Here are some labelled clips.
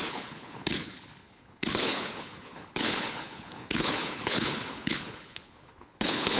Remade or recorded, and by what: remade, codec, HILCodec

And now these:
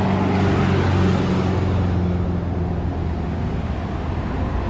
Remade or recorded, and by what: recorded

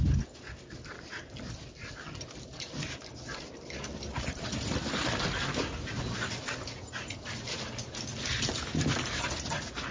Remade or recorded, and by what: recorded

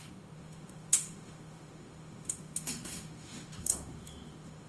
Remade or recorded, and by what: remade, autoencoder, DAC-VAE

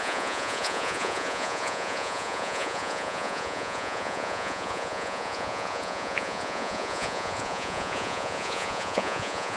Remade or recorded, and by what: remade, vocoder, Vocos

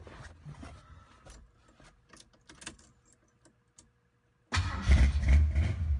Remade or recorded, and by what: recorded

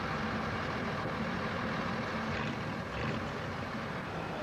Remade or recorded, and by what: recorded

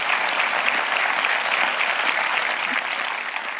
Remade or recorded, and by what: recorded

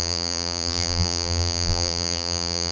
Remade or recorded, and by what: remade, vocoder, BigVGAN v2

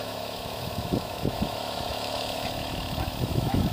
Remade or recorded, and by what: remade, autoencoder, DAC-VAE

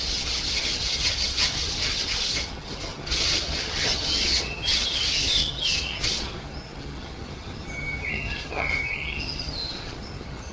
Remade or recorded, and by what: remade, vocoder, HiFi-GAN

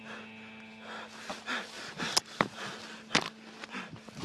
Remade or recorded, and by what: recorded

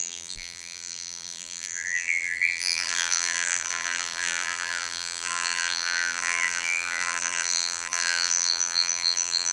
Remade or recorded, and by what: remade, vocoder, BigVGAN v2